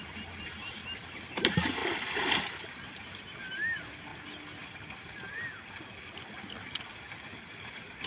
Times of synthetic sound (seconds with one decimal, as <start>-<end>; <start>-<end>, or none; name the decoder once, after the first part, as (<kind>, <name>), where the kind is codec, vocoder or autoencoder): 0.0-0.8 (vocoder, BigVGAN v2); 1.4-1.8; 2.3-4.1; 7.4-8.1